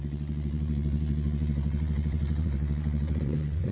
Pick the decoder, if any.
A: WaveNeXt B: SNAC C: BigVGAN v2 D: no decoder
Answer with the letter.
A